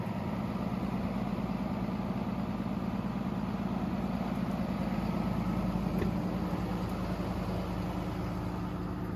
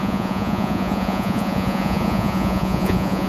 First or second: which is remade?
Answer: second